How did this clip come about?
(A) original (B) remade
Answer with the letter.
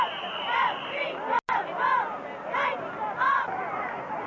A